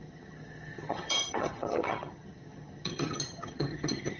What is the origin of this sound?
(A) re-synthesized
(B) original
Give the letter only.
A